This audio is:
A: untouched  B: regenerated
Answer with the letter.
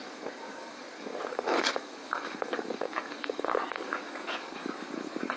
B